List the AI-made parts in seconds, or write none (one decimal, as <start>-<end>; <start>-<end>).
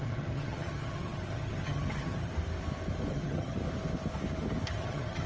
0.0-2.3; 3.1-3.6; 4.7-5.3